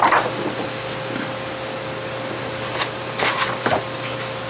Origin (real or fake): real